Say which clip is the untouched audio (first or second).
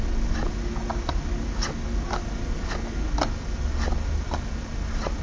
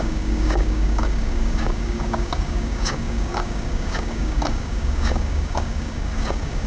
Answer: first